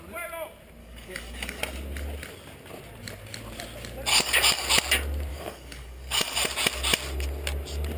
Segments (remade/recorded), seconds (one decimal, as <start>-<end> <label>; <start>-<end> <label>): 0.0-0.8 recorded; 0.8-1.6 remade; 1.6-4.1 recorded; 4.1-4.7 remade; 4.7-5.3 recorded; 5.3-6.5 remade; 6.5-8.0 recorded